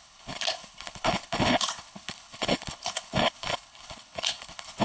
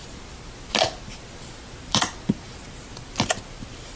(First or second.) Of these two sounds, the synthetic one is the first